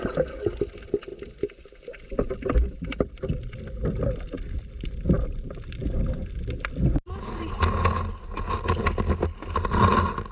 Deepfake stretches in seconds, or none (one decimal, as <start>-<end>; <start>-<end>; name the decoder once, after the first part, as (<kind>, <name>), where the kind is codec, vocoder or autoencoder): none

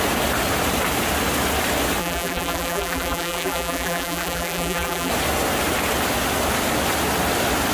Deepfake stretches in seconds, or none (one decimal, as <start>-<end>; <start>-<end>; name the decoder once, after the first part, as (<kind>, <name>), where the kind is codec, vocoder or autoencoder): 2.0-5.1 (vocoder, BigVGAN v2)